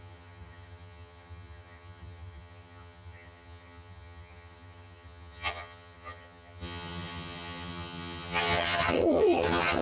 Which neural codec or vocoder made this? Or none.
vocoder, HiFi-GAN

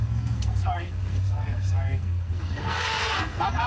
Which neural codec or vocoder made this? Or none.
codec, SNAC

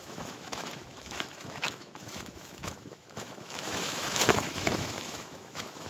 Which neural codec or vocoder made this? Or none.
autoencoder, DAC-VAE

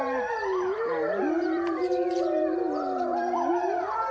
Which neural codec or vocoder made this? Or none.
vocoder, BigVGAN v2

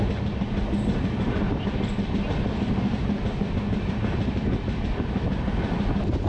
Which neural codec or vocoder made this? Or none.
none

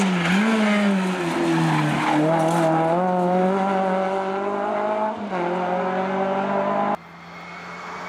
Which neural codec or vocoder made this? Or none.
none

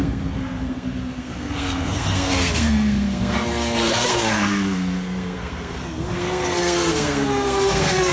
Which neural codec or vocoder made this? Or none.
codec, SNAC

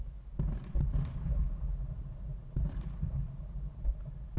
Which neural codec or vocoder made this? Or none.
none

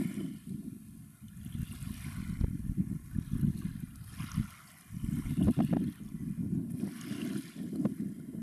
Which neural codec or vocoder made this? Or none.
none